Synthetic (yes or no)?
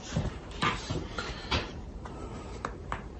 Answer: yes